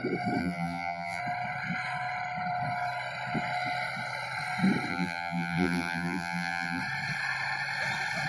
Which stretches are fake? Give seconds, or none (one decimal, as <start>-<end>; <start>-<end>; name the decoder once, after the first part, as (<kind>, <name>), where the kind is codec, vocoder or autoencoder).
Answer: 0.4-1.2 (vocoder, BigVGAN v2); 4.9-6.8